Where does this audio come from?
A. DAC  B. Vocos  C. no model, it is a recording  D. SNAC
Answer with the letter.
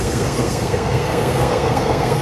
D